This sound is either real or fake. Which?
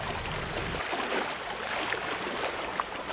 real